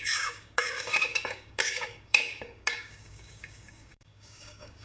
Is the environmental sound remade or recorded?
remade